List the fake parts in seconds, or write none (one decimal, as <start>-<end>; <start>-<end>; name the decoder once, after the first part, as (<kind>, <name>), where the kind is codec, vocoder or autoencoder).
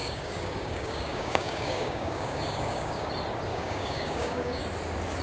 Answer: 0.0-3.1 (codec, DAC); 3.5-4.6